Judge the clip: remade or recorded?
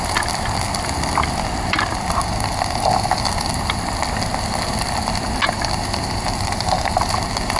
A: recorded